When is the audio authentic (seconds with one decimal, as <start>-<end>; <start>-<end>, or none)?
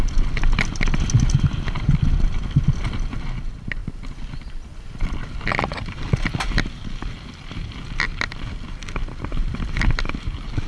0.0-10.7